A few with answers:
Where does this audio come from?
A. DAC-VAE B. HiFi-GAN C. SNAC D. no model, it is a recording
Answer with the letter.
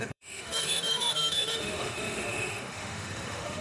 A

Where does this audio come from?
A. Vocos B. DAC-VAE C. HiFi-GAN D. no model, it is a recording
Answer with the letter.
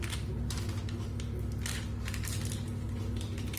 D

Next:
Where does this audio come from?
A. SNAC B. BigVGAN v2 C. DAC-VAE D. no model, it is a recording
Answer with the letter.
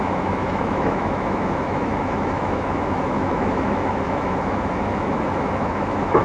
C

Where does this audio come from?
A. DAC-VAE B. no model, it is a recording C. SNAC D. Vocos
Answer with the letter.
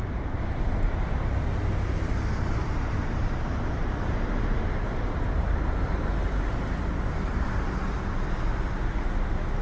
B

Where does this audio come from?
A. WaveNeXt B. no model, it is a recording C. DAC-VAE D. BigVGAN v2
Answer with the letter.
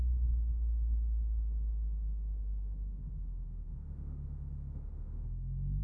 C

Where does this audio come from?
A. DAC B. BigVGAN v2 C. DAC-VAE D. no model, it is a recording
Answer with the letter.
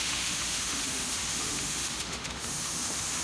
C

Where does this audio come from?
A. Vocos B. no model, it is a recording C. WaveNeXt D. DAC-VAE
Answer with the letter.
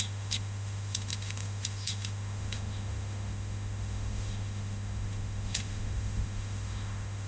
D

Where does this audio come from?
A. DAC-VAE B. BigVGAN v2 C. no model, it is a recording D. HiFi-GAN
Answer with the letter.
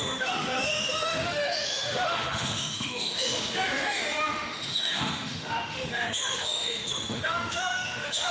A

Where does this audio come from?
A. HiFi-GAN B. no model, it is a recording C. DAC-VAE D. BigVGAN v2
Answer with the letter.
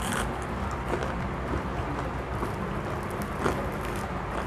B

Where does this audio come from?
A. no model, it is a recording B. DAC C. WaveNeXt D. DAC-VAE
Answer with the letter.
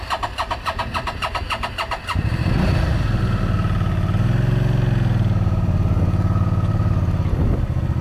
A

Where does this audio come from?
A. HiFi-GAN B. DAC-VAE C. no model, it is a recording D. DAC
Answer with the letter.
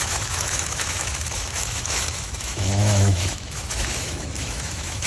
B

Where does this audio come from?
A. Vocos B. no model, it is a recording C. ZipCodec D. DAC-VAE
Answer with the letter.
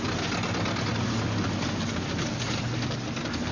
B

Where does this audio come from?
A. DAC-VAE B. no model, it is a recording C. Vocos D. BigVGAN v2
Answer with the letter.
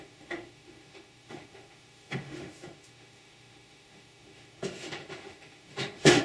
A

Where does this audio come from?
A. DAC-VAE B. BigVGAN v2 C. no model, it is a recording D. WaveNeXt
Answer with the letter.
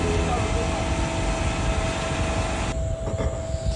C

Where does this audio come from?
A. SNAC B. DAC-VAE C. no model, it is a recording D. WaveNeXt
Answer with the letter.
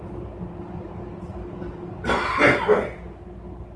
C